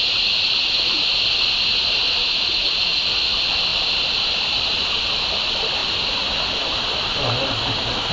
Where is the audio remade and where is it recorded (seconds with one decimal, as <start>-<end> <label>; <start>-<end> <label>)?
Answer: 0.0-2.2 recorded; 2.2-2.8 remade; 2.8-8.1 recorded